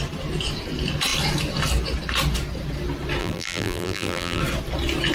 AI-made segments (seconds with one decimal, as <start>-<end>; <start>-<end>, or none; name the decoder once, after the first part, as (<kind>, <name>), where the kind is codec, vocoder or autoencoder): 3.2-4.4 (vocoder, BigVGAN v2)